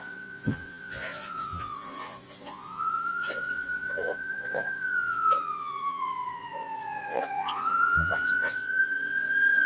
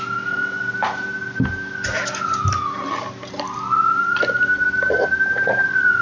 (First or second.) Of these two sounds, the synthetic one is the first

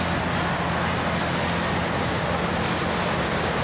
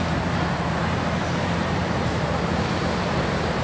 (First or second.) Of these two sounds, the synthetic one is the second